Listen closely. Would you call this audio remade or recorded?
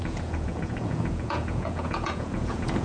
remade